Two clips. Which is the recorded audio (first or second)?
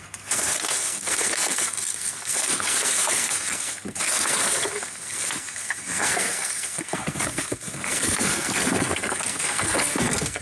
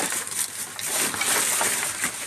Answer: second